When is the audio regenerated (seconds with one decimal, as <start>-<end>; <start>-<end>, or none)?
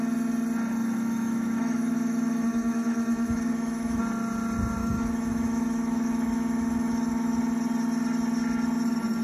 0.8-4.0; 4.8-7.4